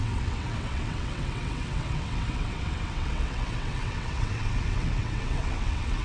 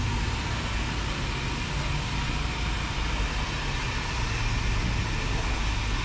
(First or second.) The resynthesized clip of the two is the first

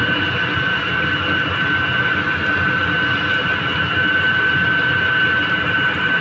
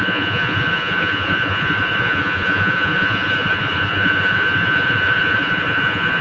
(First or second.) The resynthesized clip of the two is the second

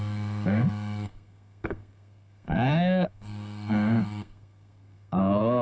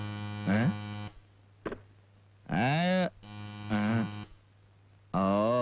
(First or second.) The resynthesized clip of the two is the first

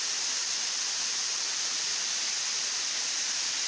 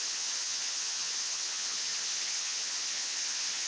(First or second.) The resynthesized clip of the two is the second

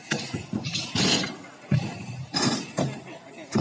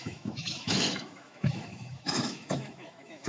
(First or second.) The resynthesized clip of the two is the second